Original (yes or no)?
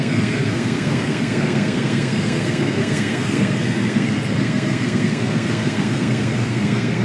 no